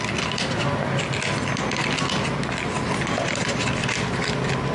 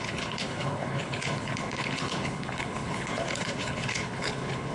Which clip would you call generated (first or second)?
second